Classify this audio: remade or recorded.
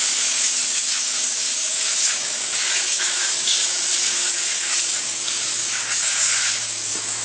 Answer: remade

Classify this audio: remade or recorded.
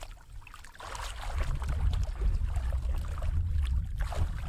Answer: recorded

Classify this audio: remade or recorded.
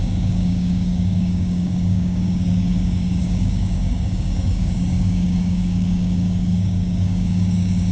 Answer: remade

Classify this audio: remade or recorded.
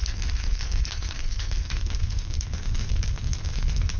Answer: remade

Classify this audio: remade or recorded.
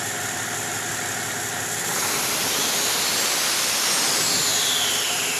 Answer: recorded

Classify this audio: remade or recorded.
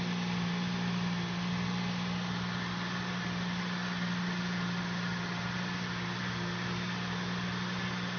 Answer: recorded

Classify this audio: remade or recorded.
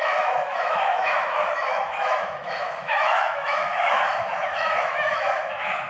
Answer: remade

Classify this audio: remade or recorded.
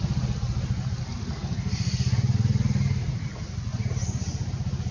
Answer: recorded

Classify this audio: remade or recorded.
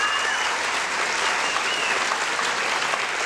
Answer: recorded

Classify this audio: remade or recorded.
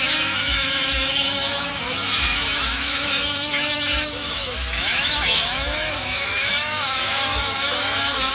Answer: remade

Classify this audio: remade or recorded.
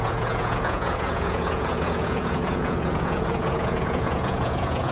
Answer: remade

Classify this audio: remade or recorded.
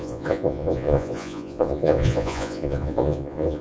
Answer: remade